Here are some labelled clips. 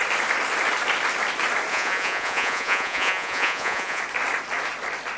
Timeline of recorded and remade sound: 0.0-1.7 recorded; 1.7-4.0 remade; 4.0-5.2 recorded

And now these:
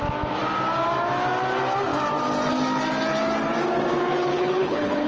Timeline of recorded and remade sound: 0.0-4.3 recorded; 4.3-5.1 remade

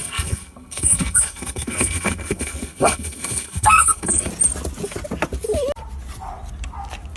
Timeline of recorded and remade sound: 0.0-4.3 remade; 4.3-7.2 recorded

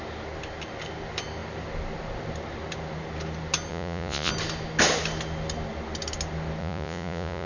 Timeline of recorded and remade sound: 0.0-3.7 recorded; 3.7-4.3 remade; 4.3-6.6 recorded; 6.6-7.5 remade

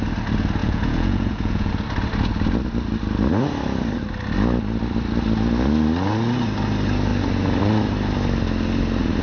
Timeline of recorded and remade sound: 0.0-0.6 recorded; 0.6-1.7 remade; 1.7-9.2 recorded

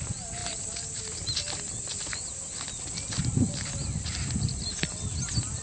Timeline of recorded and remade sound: 0.0-5.6 recorded

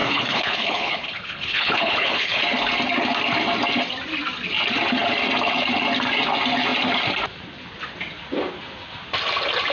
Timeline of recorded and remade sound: 0.0-2.4 remade; 2.4-9.7 recorded